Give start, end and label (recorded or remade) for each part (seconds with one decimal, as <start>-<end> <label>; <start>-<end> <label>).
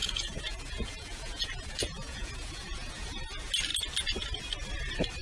0.0-3.0 remade; 3.0-5.2 recorded